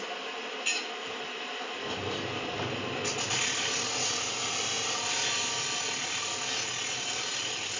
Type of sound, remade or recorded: recorded